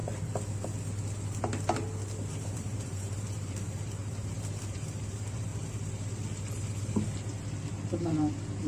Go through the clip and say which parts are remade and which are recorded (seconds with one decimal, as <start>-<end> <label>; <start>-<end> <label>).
0.0-2.3 recorded; 2.3-5.5 remade; 5.5-8.7 recorded